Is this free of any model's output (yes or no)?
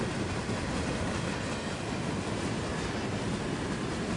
yes